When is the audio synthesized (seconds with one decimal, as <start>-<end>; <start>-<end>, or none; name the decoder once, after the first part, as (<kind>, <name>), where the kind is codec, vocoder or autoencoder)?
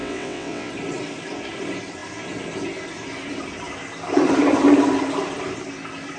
0.0-0.7 (vocoder, WaveNeXt)